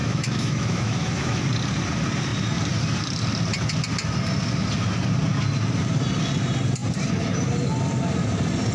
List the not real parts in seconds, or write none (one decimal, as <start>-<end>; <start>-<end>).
0.0-1.4